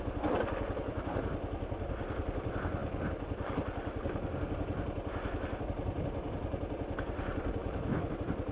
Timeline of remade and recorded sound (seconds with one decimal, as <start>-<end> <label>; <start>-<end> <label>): 0.0-7.6 recorded; 7.6-8.1 remade; 8.1-8.5 recorded